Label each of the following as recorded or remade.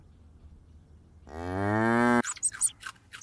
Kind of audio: recorded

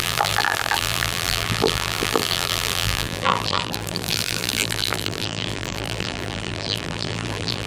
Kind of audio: remade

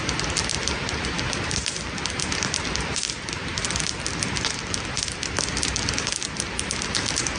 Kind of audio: remade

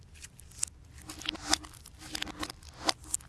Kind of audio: recorded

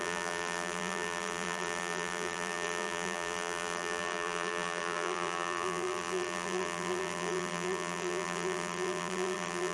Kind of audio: remade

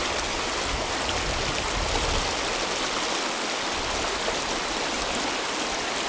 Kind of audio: recorded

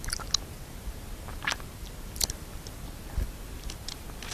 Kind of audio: recorded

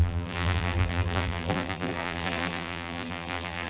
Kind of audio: remade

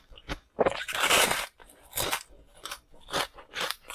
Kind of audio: remade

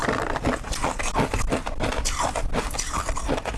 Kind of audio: recorded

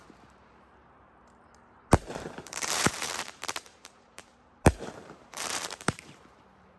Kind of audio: remade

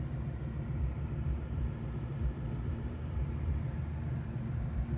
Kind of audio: remade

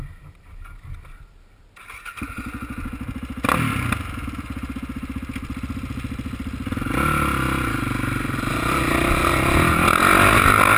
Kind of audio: recorded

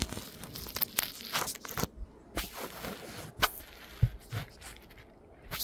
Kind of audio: recorded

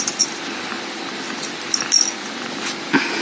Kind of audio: recorded